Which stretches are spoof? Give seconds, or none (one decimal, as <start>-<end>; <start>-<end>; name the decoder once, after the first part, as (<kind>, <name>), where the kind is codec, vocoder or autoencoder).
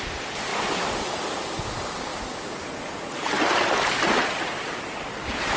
none